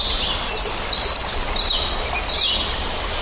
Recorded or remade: recorded